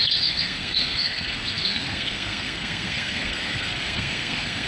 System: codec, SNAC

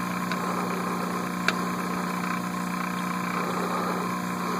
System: none